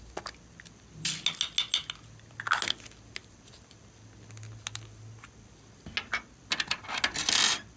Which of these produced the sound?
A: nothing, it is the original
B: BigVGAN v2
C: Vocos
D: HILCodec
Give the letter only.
A